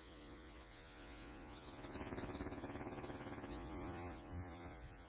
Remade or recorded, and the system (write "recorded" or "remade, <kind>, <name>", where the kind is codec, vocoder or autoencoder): remade, vocoder, Vocos